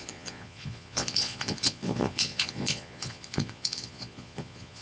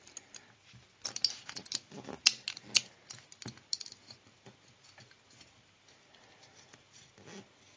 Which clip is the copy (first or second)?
first